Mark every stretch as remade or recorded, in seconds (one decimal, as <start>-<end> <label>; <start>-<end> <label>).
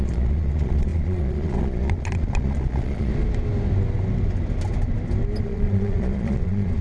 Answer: 0.0-3.1 remade; 3.1-5.4 recorded; 5.4-6.8 remade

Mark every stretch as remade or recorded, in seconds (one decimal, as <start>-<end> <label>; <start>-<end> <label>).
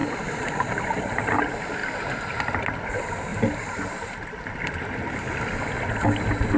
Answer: 0.0-3.3 recorded; 3.3-4.6 remade; 4.6-6.6 recorded